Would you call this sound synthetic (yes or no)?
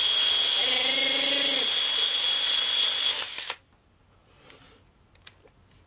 no